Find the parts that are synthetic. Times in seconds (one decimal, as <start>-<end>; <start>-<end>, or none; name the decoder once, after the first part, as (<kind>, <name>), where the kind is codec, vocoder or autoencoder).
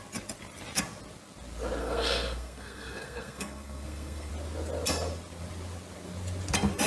1.8-4.3 (codec, SNAC)